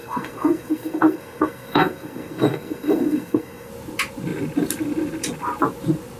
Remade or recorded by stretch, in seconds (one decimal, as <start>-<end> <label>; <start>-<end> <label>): 0.0-3.7 remade; 3.7-6.2 recorded

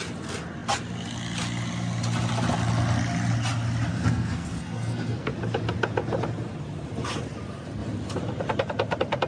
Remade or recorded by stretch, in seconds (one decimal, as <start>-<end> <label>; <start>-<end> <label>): 0.0-3.9 recorded; 3.9-5.3 remade; 5.3-9.3 recorded

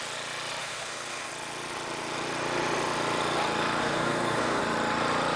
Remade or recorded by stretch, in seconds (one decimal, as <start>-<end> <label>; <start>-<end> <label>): 0.0-0.6 recorded; 0.6-1.3 remade; 1.3-3.8 recorded; 3.8-4.6 remade; 4.6-5.4 recorded

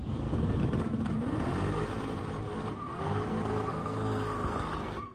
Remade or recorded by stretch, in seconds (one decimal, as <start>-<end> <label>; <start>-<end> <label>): 0.0-0.6 remade; 0.6-3.0 recorded; 3.0-5.1 remade

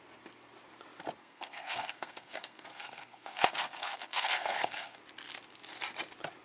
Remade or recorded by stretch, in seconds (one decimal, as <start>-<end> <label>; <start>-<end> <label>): 0.0-1.2 recorded; 1.2-5.0 remade; 5.0-6.4 recorded